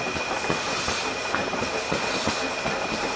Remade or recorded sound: recorded